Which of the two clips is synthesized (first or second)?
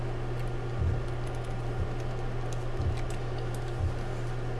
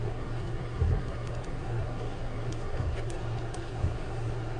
second